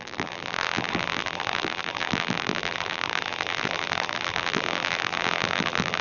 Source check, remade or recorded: remade